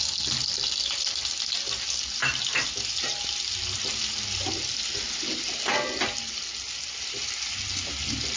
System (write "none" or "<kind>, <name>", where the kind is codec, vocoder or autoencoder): none